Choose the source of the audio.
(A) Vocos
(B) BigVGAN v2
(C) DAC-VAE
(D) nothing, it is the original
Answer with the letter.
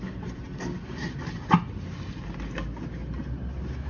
D